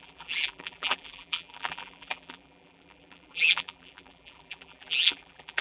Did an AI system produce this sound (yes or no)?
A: yes